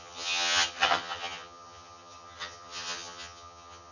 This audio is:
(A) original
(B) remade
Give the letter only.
B